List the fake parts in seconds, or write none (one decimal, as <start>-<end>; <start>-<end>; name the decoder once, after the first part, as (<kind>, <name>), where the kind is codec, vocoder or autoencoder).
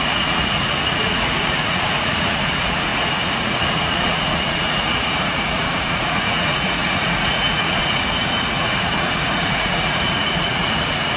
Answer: 0.0-11.2 (vocoder, Vocos)